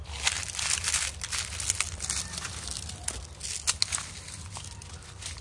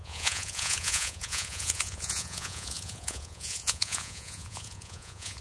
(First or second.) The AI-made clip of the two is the second